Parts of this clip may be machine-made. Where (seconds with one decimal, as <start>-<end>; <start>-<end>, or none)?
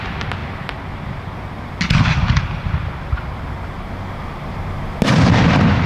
none